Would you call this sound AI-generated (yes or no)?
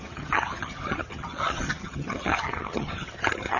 yes